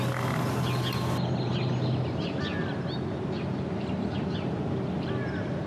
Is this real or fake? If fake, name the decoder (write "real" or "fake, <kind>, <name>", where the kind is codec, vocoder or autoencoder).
real